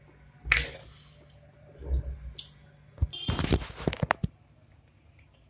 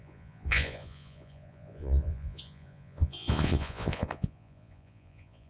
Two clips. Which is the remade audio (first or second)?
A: second